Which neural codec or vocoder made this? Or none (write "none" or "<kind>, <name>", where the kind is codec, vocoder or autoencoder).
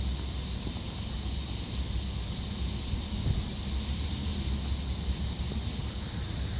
none